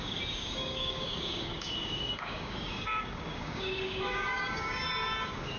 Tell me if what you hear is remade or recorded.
remade